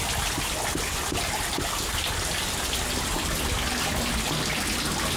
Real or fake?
real